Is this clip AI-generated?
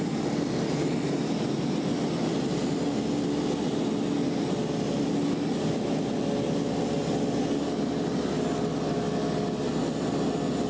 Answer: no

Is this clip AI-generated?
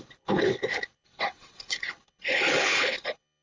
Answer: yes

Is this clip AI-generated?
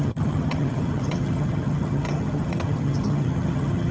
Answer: yes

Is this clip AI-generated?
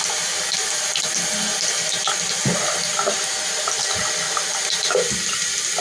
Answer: no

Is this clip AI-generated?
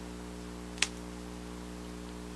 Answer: no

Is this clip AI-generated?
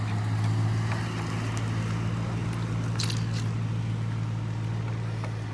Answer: no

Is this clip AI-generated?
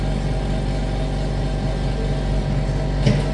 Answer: no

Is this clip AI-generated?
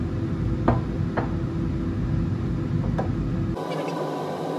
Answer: no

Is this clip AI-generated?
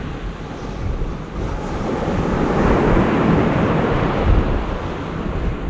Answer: no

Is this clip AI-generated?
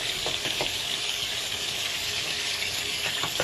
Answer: yes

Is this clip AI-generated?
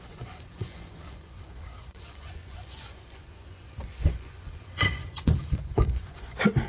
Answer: yes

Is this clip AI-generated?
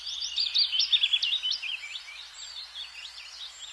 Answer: no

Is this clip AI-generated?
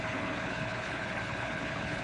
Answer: yes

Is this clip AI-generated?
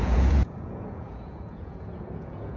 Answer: yes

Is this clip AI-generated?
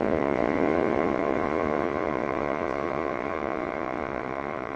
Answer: yes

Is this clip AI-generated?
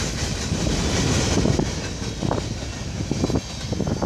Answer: no